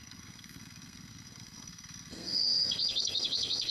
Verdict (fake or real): fake